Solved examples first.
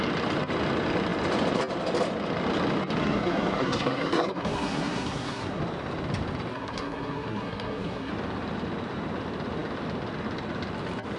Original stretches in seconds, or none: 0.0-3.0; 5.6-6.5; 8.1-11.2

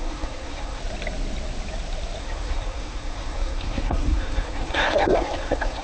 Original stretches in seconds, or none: 0.8-2.2

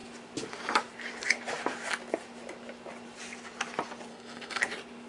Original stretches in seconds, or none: 0.0-4.1; 4.6-5.1